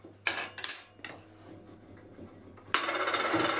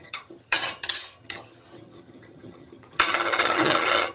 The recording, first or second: first